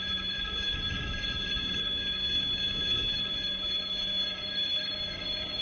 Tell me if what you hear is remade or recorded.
remade